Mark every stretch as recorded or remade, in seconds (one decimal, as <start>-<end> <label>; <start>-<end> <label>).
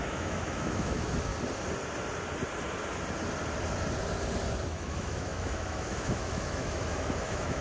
0.0-1.3 remade; 1.3-4.7 recorded; 4.7-7.6 remade